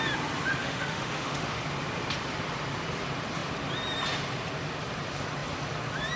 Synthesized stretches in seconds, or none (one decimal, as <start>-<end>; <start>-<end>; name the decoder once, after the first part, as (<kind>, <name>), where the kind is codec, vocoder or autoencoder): 0.6-1.6 (autoencoder, DAC-VAE)